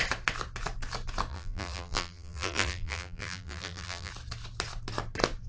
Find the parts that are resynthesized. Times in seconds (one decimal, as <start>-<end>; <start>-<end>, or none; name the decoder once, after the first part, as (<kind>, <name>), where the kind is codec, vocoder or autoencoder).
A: 1.3-4.1 (vocoder, BigVGAN v2)